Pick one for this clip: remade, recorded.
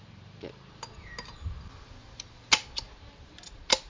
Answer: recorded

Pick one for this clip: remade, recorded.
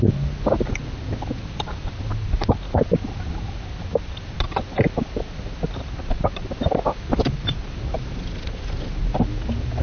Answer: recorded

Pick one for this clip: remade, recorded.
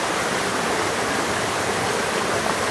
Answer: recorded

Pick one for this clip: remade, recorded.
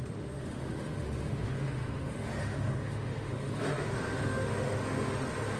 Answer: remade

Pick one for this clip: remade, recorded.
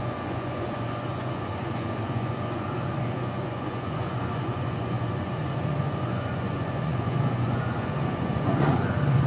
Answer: remade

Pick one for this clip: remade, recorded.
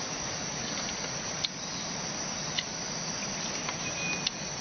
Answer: recorded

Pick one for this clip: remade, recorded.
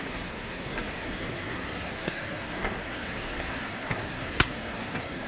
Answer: remade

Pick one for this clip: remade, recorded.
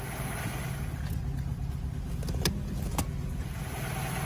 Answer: recorded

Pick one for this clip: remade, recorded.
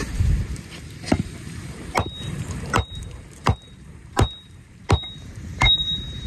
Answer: remade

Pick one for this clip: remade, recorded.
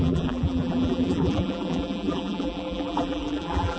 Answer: remade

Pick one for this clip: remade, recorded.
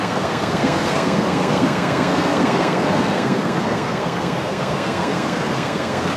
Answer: remade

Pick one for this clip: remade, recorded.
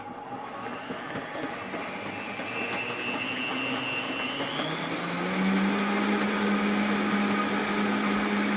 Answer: recorded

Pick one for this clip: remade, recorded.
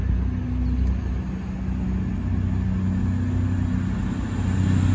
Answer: recorded